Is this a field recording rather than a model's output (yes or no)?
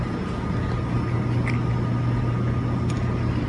yes